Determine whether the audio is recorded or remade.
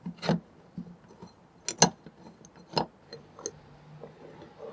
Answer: recorded